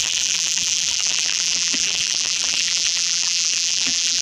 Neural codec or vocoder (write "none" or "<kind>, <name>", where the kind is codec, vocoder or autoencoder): vocoder, BigVGAN v2